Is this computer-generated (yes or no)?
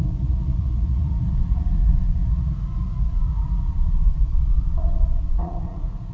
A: yes